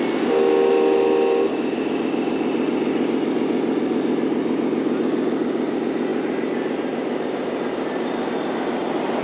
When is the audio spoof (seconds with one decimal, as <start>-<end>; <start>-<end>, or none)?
none

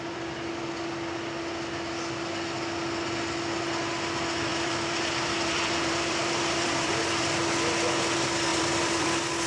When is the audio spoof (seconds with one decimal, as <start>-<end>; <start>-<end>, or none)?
4.5-6.9; 8.5-9.1